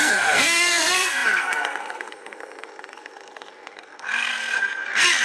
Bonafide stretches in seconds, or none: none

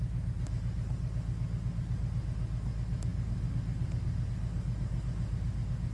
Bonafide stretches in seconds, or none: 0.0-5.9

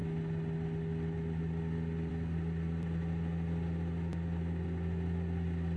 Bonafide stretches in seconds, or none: 0.0-5.8

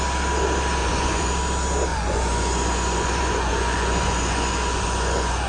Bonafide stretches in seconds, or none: 0.0-0.8; 1.3-1.9